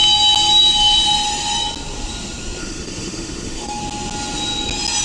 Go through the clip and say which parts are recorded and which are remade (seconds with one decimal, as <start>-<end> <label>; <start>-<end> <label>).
0.0-2.6 recorded; 2.6-3.8 remade; 3.8-5.0 recorded